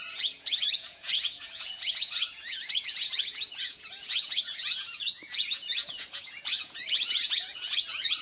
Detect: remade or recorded remade